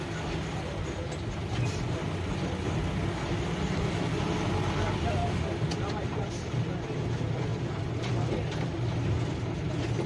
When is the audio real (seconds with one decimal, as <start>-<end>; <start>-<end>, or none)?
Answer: 0.0-10.1